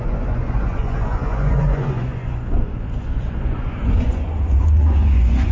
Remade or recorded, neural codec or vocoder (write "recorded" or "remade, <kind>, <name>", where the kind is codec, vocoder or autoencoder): remade, vocoder, Vocos